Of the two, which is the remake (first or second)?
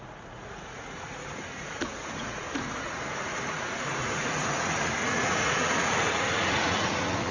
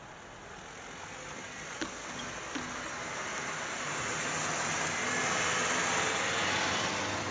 first